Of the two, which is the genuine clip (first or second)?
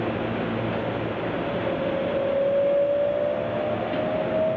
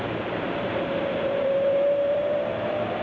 first